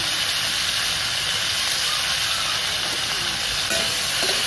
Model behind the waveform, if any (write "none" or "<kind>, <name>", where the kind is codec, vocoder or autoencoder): none